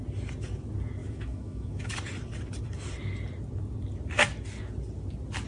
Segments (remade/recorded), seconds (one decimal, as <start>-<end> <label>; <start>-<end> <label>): 0.0-1.0 recorded; 1.0-1.9 remade; 1.9-5.5 recorded